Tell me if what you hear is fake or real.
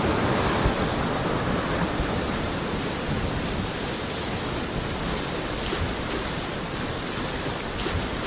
real